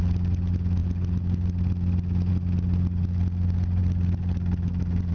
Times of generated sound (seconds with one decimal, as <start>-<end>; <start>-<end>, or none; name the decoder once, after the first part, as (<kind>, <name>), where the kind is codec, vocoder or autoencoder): none